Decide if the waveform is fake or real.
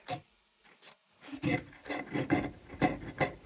real